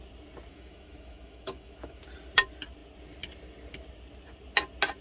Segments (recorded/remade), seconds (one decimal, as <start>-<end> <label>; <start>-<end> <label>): 0.0-0.5 recorded; 0.5-2.0 remade; 2.0-5.0 recorded